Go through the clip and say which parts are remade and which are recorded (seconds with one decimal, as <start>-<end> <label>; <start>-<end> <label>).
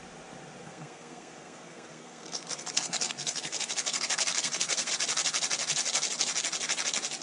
0.0-0.6 recorded; 0.6-4.9 remade; 4.9-7.2 recorded